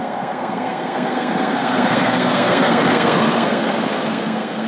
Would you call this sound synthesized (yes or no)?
yes